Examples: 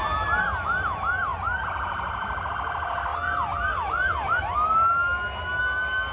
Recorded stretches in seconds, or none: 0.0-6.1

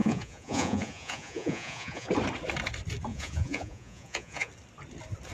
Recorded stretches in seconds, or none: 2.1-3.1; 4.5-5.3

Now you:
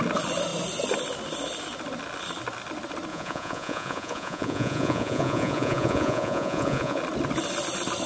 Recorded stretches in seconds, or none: 0.0-3.1; 7.0-8.1

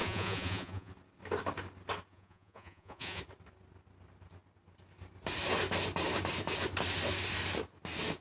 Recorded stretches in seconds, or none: 0.9-2.1; 3.2-8.2

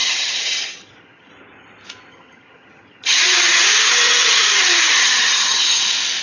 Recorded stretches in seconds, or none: 1.3-2.1; 5.8-6.2

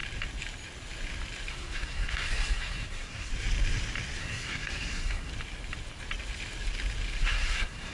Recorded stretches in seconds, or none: 0.0-1.5; 3.3-4.2; 5.3-7.2